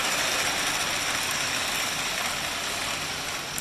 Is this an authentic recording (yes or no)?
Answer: yes